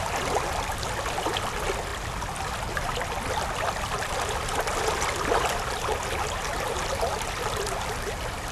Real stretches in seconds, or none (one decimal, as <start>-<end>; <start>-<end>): 0.0-8.5

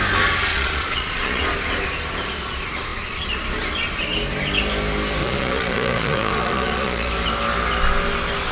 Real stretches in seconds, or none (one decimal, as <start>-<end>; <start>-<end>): 0.0-0.5; 1.4-5.2; 7.1-8.5

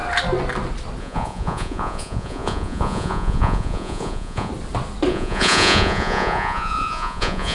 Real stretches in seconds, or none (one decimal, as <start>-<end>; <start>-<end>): 0.0-1.0; 4.5-5.1

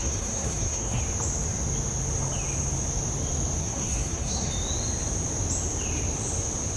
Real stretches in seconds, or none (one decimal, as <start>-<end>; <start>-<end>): 1.0-3.6; 4.5-6.8

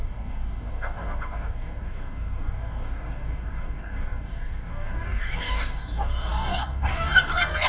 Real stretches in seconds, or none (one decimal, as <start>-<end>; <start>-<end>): none